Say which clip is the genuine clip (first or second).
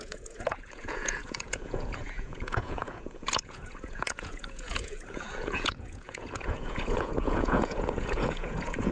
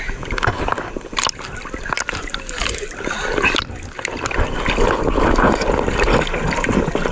second